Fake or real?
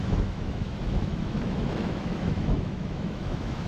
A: fake